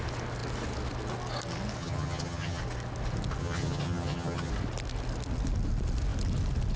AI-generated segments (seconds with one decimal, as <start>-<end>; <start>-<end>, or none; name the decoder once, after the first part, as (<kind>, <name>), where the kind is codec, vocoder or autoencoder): 1.8-2.6 (vocoder, HiFi-GAN); 3.4-4.5

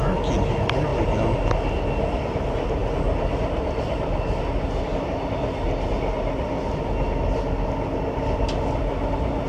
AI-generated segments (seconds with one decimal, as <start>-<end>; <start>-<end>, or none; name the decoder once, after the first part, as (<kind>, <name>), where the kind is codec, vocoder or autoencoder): none